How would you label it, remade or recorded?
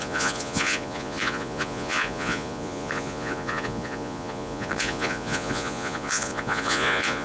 remade